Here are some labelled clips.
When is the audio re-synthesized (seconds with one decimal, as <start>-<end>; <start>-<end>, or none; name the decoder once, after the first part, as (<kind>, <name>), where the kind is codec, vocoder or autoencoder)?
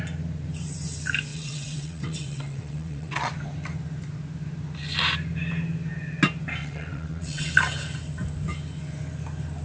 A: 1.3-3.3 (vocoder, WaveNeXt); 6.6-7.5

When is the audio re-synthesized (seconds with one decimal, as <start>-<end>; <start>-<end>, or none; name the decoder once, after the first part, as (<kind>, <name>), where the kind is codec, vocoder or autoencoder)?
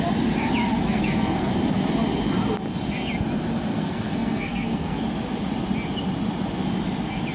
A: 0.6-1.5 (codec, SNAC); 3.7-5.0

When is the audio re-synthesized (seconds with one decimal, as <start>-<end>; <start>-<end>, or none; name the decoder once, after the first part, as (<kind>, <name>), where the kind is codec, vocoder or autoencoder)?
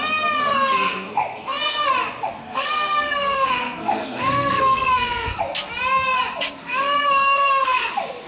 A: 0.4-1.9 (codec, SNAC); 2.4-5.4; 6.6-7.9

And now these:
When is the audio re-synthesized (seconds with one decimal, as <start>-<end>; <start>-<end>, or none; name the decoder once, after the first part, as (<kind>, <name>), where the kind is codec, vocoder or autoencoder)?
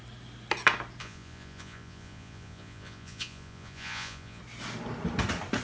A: 1.0-4.4 (vocoder, Vocos)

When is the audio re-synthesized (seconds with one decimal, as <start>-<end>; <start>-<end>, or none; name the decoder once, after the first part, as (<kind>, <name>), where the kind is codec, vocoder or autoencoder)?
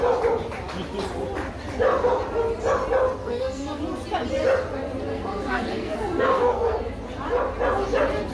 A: 3.2-3.8 (codec, SNAC); 5.1-6.9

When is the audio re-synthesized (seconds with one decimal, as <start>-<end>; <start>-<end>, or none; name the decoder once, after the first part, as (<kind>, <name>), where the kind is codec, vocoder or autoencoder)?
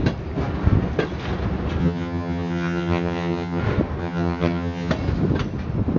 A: 1.8-3.6 (vocoder, HiFi-GAN); 4.0-4.9